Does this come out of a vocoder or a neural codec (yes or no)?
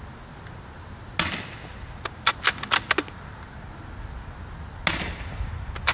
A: no